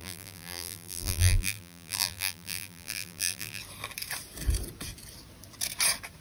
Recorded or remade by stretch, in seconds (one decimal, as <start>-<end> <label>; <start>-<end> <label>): 0.0-3.6 remade; 3.6-6.2 recorded

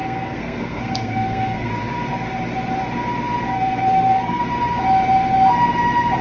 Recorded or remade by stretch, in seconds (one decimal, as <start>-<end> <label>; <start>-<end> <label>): 0.0-1.7 remade; 1.7-3.5 recorded; 3.5-4.4 remade; 4.4-6.2 recorded

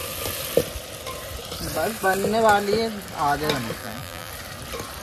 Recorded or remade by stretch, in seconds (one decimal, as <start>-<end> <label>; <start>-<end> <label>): 0.0-3.8 recorded; 3.8-4.3 remade; 4.3-5.0 recorded

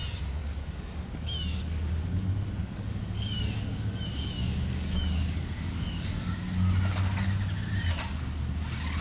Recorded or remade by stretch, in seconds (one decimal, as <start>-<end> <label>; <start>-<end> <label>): 0.0-0.4 recorded; 0.4-1.6 remade; 1.6-2.6 recorded; 2.6-6.3 remade; 6.3-9.0 recorded

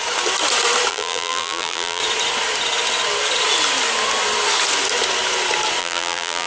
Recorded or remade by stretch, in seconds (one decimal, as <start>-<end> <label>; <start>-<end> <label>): 0.0-0.9 recorded; 0.9-2.0 remade; 2.0-5.8 recorded; 5.8-6.5 remade

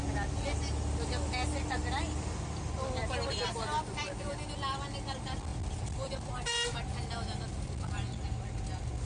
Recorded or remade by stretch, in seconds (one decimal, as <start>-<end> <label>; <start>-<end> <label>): 0.0-5.5 recorded; 5.5-6.1 remade; 6.1-9.1 recorded